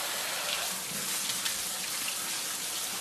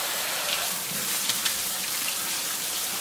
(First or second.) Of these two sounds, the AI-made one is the second